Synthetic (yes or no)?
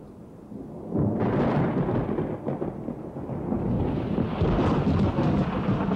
no